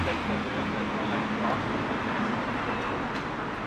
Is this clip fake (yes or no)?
no